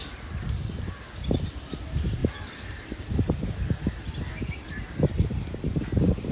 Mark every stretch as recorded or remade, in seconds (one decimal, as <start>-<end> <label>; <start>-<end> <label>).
0.0-6.3 recorded

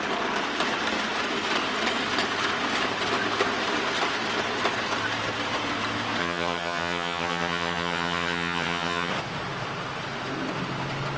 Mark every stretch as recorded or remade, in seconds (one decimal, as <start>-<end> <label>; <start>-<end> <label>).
0.0-6.2 recorded; 6.2-9.1 remade; 9.1-11.2 recorded

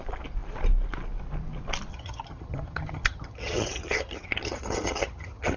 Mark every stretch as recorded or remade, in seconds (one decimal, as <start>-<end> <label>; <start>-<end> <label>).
0.0-1.9 recorded; 1.9-5.6 remade

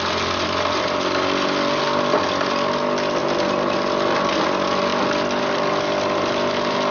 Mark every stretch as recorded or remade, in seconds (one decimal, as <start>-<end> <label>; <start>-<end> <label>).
0.0-6.9 recorded

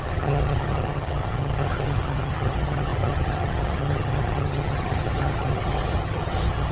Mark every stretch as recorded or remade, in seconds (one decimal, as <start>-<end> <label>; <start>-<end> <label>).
0.0-6.7 remade